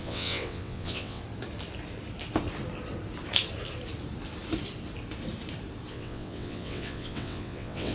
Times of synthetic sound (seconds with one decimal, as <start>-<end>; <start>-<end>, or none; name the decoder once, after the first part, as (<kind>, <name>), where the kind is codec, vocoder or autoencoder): 0.0-1.2 (vocoder, WaveNeXt); 5.9-7.9